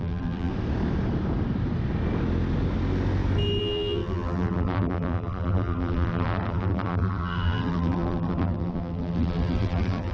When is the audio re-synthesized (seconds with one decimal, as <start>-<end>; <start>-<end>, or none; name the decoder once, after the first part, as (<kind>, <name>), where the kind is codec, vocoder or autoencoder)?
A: 0.0-0.5 (vocoder, BigVGAN v2); 3.6-10.1